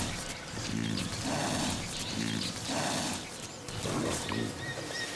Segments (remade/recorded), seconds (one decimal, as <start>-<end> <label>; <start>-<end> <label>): 0.0-5.2 recorded